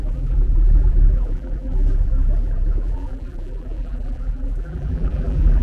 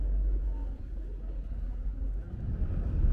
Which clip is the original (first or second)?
second